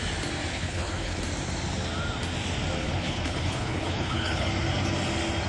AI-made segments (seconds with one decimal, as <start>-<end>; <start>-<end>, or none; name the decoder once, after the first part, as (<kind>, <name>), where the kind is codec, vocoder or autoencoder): 0.5-1.2 (codec, HILCodec); 2.8-4.5